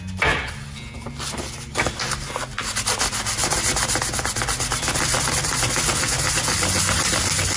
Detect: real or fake real